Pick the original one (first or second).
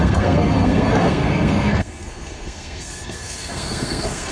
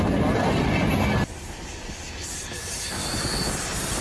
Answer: second